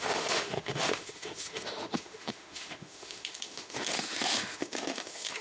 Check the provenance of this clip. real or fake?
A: fake